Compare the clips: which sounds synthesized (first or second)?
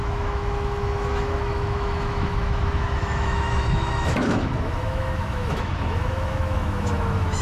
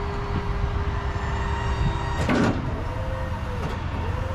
first